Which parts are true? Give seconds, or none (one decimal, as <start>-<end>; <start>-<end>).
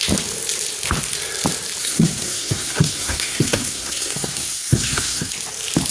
0.0-1.8; 5.3-5.9